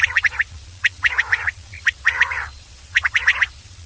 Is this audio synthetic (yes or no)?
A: yes